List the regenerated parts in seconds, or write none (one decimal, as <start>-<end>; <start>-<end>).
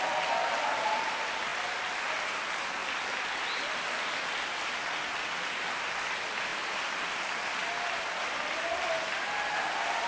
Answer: 6.5-7.0